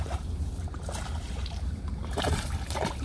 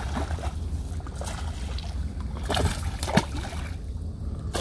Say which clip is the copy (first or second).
first